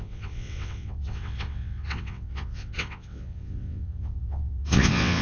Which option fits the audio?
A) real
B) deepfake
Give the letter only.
B